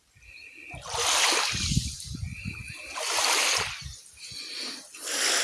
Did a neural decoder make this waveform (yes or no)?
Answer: no